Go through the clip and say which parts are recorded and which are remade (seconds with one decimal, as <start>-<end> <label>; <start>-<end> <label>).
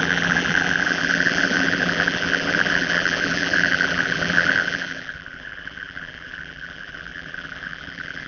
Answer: 0.0-8.3 remade